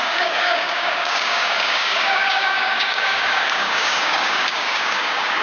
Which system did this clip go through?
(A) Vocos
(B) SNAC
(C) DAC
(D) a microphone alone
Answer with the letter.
C